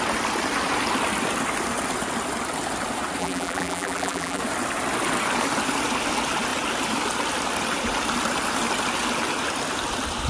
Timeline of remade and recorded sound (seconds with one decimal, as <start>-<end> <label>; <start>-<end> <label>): 0.0-3.2 recorded; 3.2-4.4 remade; 4.4-10.3 recorded